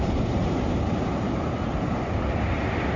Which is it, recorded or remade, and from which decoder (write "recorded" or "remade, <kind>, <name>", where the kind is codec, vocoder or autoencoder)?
recorded